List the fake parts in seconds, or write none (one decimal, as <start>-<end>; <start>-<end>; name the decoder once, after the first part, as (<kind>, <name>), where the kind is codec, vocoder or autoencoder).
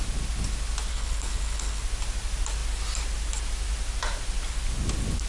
0.9-1.8 (codec, HILCodec)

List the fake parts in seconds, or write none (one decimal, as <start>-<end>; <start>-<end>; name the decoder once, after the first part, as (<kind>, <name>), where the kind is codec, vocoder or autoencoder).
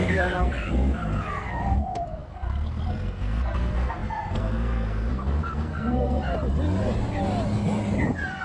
0.0-6.3 (codec, SNAC)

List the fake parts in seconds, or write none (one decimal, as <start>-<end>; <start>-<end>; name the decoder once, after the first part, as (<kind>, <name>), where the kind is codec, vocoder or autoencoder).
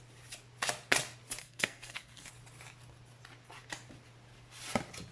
1.4-2.3 (codec, SNAC)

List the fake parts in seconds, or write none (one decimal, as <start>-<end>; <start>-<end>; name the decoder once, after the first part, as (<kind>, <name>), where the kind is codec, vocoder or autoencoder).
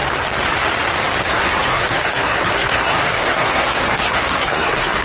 1.2-5.0 (codec, SNAC)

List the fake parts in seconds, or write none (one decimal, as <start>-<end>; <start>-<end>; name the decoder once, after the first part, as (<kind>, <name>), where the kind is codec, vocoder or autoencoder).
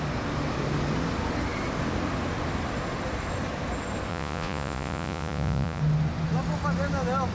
4.1-5.8 (vocoder, Vocos)